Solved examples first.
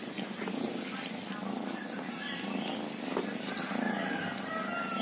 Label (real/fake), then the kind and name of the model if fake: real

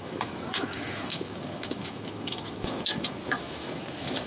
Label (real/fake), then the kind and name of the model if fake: fake, autoencoder, DAC-VAE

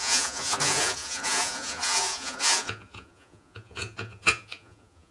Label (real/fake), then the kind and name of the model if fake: fake, vocoder, Vocos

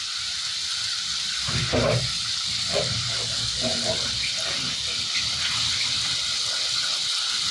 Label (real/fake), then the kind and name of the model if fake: real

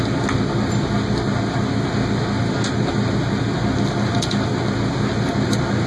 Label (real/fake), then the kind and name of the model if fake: real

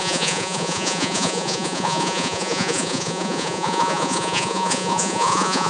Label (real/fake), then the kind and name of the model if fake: fake, vocoder, Vocos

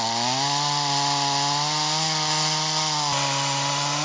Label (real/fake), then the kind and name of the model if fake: real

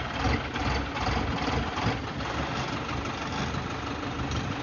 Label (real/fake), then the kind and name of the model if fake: real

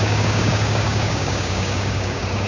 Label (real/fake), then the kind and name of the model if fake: fake, codec, DAC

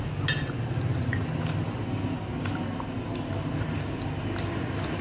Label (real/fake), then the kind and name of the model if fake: real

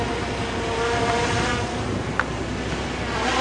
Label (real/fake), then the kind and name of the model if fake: real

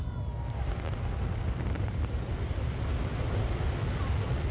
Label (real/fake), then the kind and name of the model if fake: real